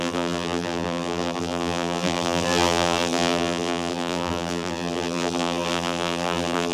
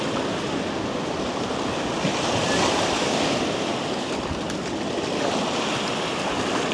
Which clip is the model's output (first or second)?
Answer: first